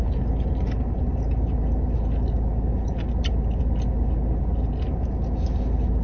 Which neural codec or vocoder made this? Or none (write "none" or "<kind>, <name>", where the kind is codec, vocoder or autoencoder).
none